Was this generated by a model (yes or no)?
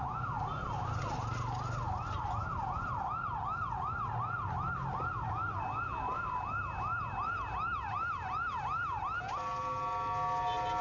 no